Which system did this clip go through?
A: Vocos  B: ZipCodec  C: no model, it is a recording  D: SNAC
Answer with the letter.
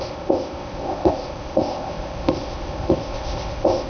B